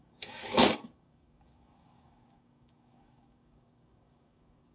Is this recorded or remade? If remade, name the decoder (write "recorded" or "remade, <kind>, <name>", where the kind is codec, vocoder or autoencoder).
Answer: remade, codec, DAC